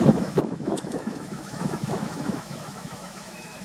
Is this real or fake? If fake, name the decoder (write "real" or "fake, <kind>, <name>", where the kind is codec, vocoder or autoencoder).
fake, autoencoder, DAC-VAE